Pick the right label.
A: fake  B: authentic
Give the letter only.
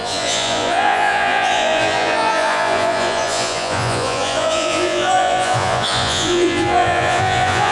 A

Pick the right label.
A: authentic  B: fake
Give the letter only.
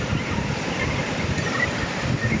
A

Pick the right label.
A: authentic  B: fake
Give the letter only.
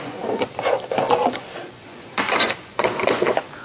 B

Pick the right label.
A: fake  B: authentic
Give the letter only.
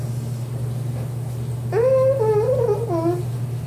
B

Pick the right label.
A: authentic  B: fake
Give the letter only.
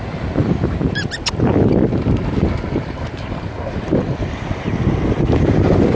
A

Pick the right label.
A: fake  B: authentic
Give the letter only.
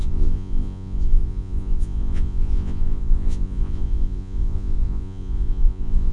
A